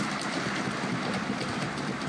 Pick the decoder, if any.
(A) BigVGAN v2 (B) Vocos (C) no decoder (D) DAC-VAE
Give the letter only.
C